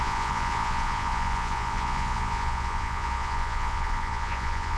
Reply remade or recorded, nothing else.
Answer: remade